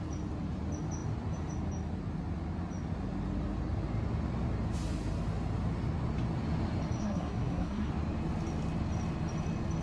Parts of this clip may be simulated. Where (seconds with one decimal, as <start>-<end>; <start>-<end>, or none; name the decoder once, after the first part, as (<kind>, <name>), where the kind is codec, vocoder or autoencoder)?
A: 7.0-7.9 (codec, SNAC)